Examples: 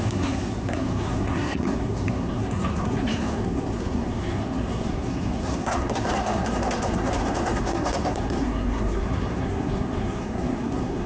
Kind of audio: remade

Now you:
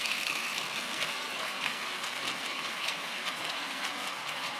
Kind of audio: remade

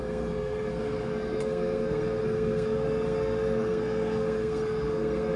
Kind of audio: remade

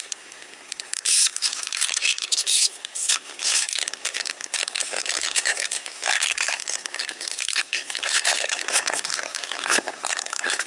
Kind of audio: remade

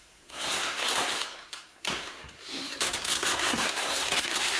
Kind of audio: remade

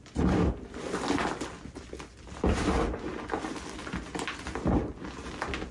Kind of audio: recorded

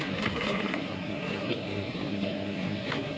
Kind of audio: remade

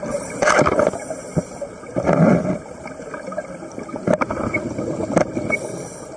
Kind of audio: recorded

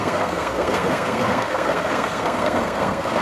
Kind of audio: remade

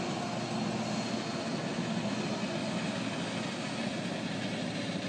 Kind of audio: recorded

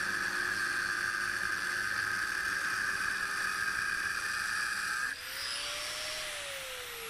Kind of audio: recorded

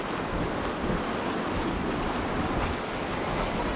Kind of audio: recorded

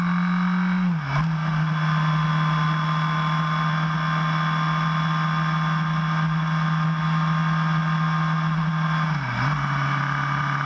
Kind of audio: recorded